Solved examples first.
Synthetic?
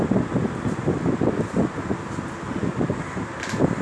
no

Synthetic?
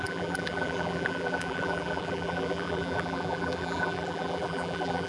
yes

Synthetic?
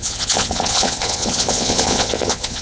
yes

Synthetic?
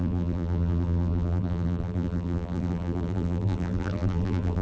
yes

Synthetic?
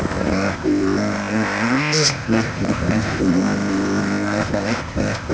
yes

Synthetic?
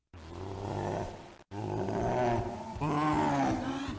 no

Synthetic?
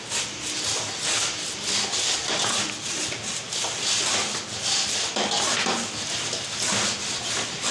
no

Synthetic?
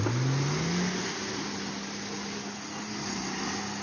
no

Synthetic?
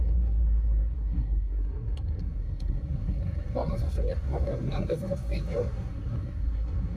yes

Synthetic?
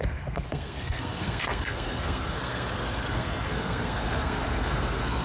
yes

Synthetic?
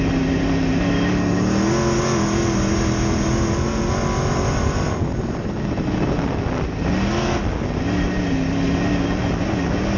no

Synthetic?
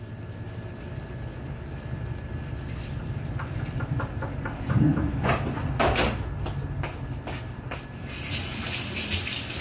no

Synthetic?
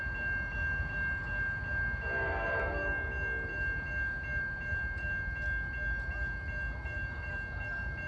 no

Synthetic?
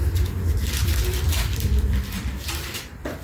yes